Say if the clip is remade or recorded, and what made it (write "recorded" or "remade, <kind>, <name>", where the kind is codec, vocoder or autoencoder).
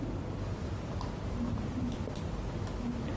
recorded